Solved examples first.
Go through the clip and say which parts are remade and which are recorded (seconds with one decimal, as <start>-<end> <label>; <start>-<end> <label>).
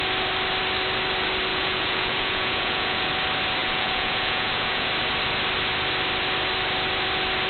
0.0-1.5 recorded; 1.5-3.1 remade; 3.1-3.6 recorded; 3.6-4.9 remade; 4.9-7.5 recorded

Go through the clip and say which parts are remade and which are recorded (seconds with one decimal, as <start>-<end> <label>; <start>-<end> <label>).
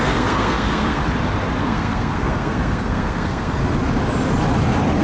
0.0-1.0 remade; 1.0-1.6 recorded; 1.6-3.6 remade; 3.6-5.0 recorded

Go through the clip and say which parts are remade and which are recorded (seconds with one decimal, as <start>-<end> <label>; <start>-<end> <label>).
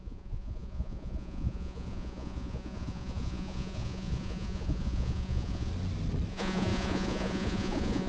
0.0-5.7 remade; 5.7-6.3 recorded; 6.3-8.1 remade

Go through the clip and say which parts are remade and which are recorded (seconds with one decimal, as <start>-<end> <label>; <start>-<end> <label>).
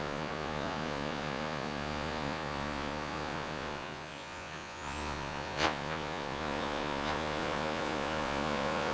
0.0-8.9 remade